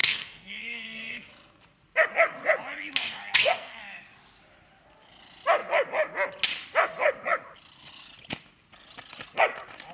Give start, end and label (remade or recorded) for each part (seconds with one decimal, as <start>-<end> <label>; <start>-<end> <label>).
0.0-1.3 remade; 1.3-3.0 recorded; 3.0-3.8 remade; 3.8-9.9 recorded

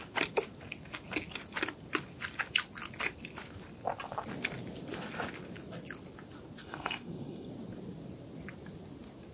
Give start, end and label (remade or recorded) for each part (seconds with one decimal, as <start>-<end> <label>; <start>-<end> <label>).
0.0-6.6 recorded; 6.6-7.5 remade; 7.5-9.3 recorded

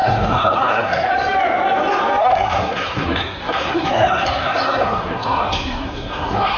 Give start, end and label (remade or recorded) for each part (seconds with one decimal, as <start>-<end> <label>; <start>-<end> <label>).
0.0-1.1 remade; 1.1-2.2 recorded; 2.2-6.6 remade

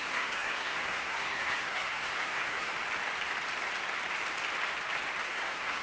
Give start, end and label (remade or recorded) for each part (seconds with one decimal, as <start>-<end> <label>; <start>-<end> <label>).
0.0-2.7 remade; 2.7-5.3 recorded; 5.3-5.8 remade

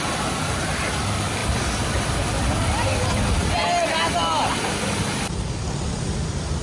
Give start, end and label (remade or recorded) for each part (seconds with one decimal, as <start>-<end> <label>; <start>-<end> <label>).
0.0-6.6 recorded

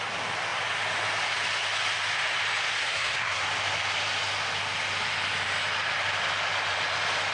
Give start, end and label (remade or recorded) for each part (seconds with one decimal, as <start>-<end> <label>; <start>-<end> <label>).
0.0-2.8 recorded; 2.8-3.4 remade; 3.4-7.3 recorded

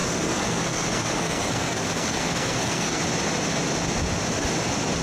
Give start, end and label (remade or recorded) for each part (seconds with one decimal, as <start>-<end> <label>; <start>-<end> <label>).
0.0-3.0 remade; 3.0-5.0 recorded

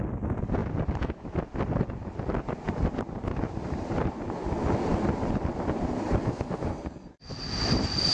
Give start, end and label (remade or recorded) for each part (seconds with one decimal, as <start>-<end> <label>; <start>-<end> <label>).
0.0-6.7 recorded; 6.7-7.3 remade; 7.3-8.1 recorded